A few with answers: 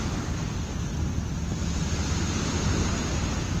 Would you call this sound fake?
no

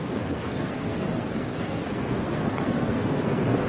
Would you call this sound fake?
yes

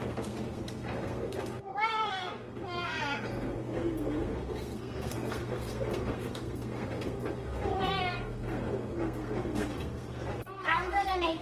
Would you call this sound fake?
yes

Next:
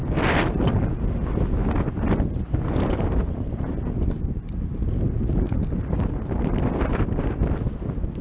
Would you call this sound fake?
no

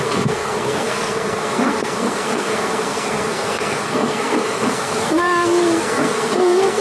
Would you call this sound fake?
yes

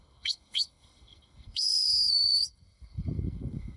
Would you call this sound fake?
yes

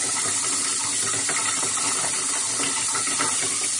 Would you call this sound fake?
no